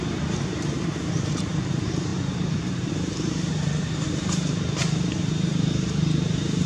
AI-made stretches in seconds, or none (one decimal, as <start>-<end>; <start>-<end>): 0.0-6.7